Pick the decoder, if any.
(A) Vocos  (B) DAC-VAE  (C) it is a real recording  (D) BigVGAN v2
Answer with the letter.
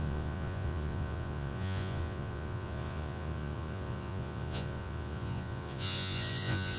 A